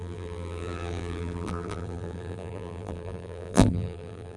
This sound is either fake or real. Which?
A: fake